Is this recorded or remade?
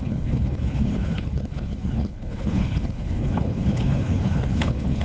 remade